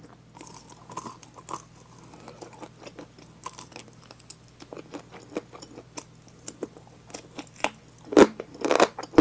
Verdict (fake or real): real